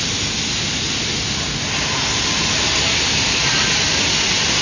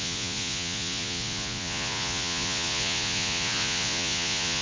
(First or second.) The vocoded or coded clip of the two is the second